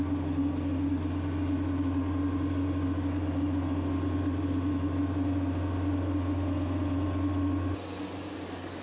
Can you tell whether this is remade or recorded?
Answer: recorded